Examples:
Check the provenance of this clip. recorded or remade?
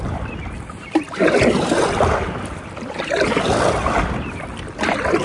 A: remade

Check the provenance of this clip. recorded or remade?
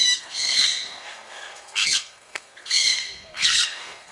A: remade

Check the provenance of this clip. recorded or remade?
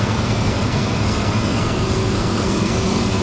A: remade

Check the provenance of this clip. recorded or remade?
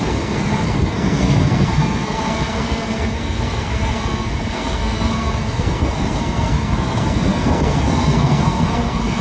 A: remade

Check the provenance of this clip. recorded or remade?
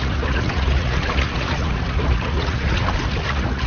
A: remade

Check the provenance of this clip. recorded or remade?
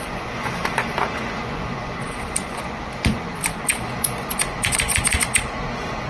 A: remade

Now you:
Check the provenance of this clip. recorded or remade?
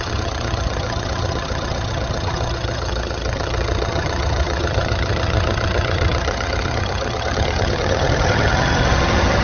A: remade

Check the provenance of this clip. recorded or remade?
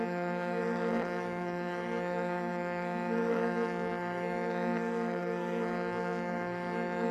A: remade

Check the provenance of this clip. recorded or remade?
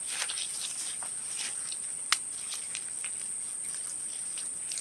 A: remade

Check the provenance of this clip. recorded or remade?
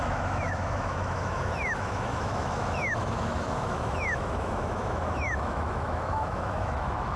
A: remade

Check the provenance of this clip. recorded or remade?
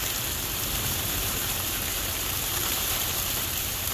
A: remade